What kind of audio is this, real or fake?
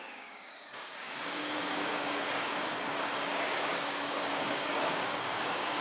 fake